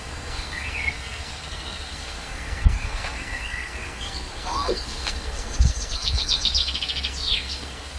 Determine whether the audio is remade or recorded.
remade